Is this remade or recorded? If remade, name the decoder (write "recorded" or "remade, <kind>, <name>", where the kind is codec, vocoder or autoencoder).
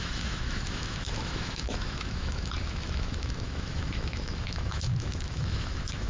remade, autoencoder, DAC-VAE